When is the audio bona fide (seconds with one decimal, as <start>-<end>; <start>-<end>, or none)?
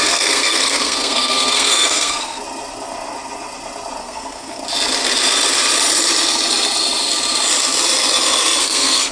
2.4-4.0; 4.6-8.6